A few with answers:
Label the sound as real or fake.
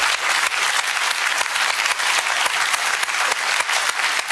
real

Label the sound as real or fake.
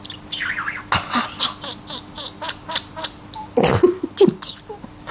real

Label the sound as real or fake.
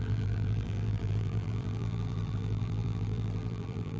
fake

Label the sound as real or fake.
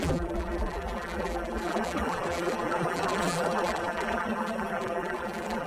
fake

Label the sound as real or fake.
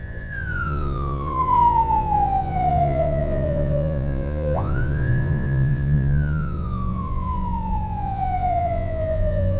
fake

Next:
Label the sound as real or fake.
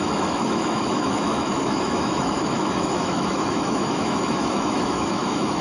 fake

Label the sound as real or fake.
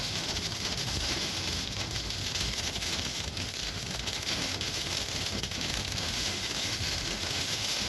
fake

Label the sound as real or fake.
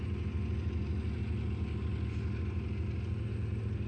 real